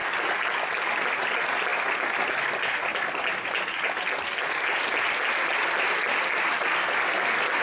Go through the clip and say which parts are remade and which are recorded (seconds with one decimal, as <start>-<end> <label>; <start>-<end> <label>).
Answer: 0.0-7.6 recorded